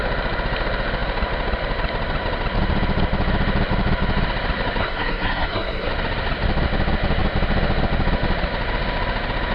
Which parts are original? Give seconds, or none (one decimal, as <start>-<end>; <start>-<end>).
0.0-4.8; 5.9-9.5